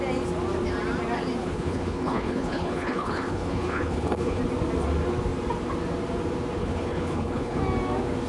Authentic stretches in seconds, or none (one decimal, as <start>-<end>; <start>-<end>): 0.0-1.4; 4.4-6.6; 7.6-8.3